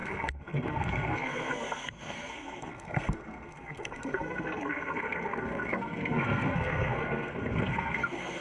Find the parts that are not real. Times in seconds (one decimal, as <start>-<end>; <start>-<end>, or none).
0.0-8.4